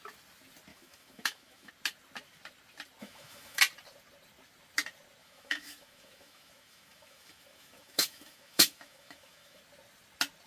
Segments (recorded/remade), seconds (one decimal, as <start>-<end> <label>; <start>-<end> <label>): 0.0-0.7 recorded; 0.7-1.7 remade; 1.7-3.0 recorded; 3.0-3.6 remade; 3.6-5.2 recorded; 5.2-9.6 remade; 9.6-10.5 recorded